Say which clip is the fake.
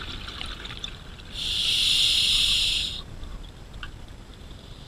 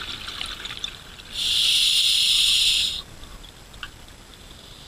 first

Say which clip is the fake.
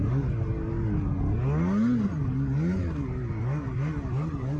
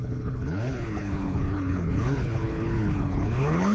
second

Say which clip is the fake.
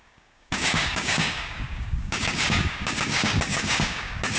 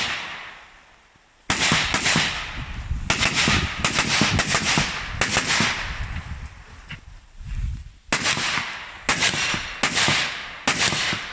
first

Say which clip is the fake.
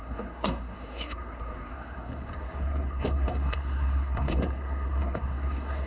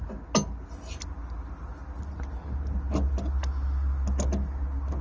first